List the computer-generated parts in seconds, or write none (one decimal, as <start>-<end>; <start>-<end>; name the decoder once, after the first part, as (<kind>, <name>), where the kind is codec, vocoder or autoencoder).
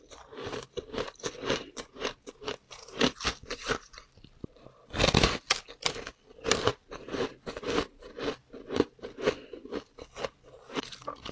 1.6-2.3 (vocoder, BigVGAN v2)